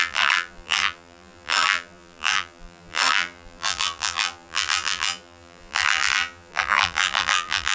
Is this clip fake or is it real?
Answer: fake